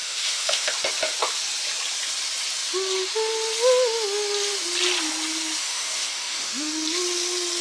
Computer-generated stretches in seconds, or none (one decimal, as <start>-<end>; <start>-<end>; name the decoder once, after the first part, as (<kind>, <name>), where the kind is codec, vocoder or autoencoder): 0.0-0.7 (autoencoder, DAC-VAE); 5.6-6.7